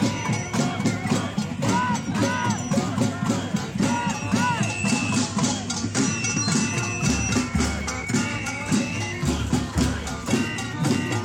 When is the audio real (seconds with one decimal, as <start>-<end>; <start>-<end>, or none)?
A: 0.0-8.3; 10.1-11.2

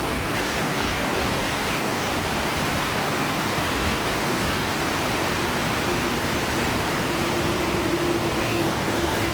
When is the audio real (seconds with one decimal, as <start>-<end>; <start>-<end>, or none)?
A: 2.1-2.8; 4.8-8.4

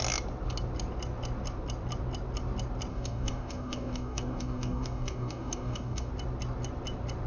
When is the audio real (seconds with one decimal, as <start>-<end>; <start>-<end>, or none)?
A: 0.0-2.9; 6.1-7.3

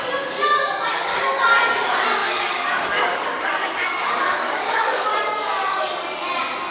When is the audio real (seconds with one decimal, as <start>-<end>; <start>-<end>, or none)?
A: 0.0-0.9; 1.4-2.2; 5.9-6.7